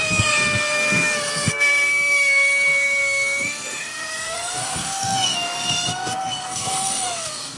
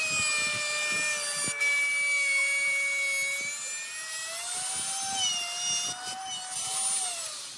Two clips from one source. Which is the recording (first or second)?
second